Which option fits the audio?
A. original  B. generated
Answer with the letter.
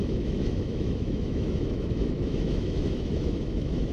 B